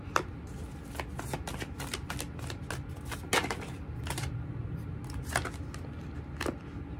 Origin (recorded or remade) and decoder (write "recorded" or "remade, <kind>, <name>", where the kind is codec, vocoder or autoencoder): recorded